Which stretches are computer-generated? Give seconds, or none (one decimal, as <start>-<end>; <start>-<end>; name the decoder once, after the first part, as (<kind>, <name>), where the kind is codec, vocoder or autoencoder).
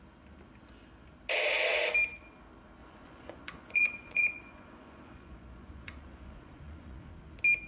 2.8-7.1 (vocoder, Vocos)